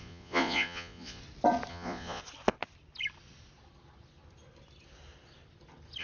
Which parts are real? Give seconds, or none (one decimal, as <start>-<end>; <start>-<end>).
1.2-1.7; 2.2-6.0